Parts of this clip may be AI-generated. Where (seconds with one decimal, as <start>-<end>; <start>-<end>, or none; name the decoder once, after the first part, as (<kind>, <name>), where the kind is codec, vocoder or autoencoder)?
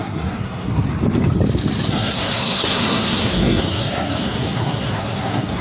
0.0-0.7 (codec, SNAC); 1.9-5.6